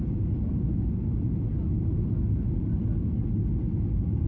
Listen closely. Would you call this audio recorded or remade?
recorded